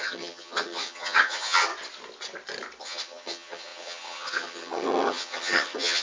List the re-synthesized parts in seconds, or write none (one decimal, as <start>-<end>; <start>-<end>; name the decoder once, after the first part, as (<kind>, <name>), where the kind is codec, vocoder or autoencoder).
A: 0.0-1.7 (vocoder, HiFi-GAN); 2.8-6.0

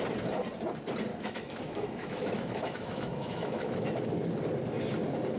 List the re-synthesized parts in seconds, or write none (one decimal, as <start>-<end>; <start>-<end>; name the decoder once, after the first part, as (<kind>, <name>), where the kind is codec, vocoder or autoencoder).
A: 1.1-4.0 (autoencoder, DAC-VAE)

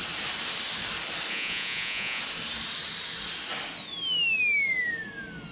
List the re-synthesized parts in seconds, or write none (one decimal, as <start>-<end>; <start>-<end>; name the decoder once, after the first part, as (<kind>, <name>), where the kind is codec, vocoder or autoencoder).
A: 1.3-2.2 (vocoder, Vocos)

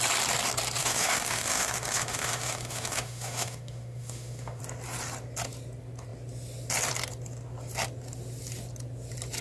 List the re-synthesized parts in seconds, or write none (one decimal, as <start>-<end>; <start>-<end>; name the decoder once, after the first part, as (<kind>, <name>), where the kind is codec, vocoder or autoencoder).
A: 0.8-4.6 (autoencoder, DAC-VAE)

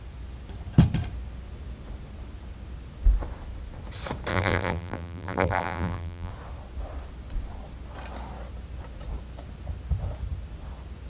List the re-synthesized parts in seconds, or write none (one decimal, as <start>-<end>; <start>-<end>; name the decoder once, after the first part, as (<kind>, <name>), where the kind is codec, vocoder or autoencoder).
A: 4.3-6.3 (vocoder, BigVGAN v2)

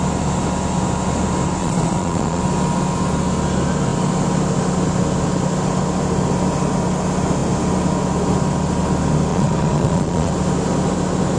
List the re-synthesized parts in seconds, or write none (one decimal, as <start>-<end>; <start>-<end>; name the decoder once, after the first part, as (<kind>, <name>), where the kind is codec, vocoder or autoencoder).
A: 1.6-2.4 (vocoder, Vocos); 9.3-10.3